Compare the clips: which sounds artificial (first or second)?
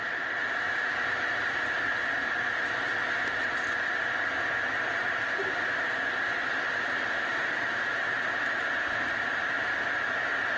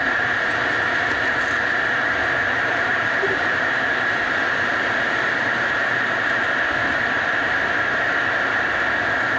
second